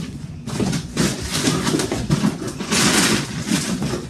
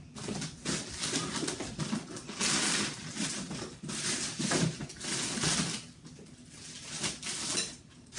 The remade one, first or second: first